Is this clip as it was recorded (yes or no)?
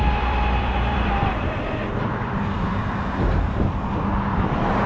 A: no